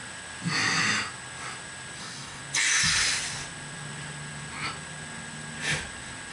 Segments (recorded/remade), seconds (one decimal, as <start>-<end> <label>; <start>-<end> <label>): 0.0-2.0 recorded; 2.0-2.4 remade; 2.4-6.3 recorded